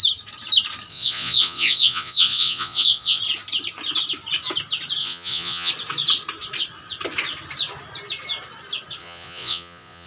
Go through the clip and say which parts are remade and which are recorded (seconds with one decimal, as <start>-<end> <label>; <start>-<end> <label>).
0.0-0.9 recorded; 0.9-3.2 remade; 3.2-5.0 recorded; 5.0-5.7 remade; 5.7-9.0 recorded; 9.0-10.1 remade